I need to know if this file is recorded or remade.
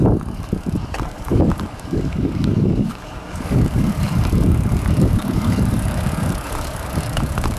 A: remade